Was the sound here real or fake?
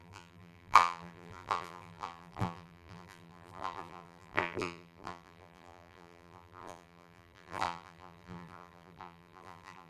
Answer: fake